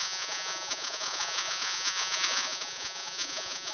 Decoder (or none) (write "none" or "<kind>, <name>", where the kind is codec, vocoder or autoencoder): vocoder, Vocos